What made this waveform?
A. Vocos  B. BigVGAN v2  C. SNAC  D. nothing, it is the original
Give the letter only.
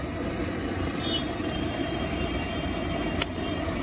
D